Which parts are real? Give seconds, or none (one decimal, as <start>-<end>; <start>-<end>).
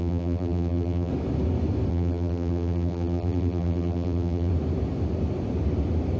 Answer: 1.1-1.9; 4.5-6.2